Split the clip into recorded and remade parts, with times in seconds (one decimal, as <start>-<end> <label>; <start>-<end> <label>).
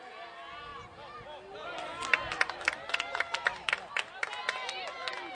0.0-5.3 recorded